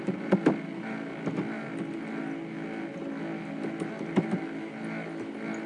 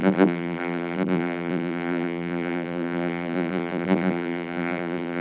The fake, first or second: second